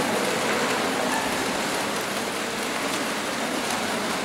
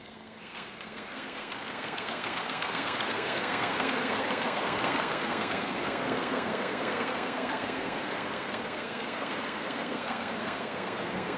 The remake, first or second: second